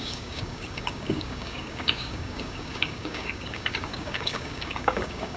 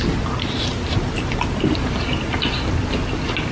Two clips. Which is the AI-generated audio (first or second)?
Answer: first